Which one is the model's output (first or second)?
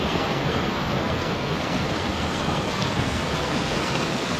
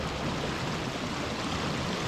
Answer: first